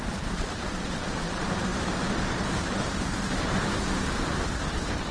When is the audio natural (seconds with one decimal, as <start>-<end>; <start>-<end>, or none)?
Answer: none